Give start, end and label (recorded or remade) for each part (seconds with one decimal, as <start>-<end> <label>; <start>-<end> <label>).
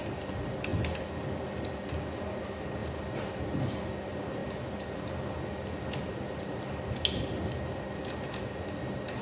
0.0-9.2 recorded